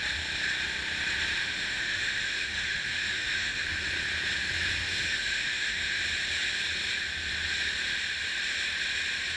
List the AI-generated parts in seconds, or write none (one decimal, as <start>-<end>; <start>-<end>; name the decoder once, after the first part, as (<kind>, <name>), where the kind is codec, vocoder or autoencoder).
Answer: 1.4-3.6 (autoencoder, DAC-VAE); 4.8-6.0